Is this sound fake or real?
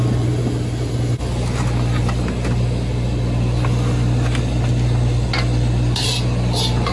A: real